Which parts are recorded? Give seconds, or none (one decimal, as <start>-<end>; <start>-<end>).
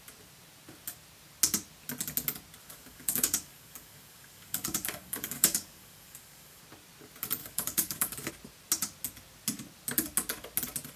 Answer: 0.0-2.6; 6.6-7.4; 8.3-11.0